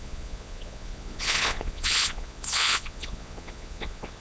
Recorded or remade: remade